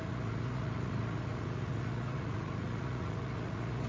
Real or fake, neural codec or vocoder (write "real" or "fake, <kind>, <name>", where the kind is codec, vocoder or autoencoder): fake, vocoder, Vocos